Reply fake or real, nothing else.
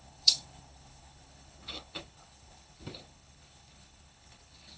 fake